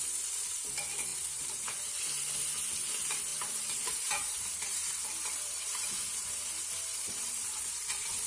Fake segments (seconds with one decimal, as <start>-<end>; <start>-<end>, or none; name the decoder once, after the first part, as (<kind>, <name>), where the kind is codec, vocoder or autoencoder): 1.1-1.9 (vocoder, BigVGAN v2); 3.3-8.3